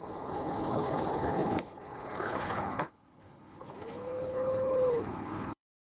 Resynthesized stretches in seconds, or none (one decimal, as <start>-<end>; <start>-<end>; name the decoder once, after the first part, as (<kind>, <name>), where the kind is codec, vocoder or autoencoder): 0.0-5.9 (codec, HILCodec)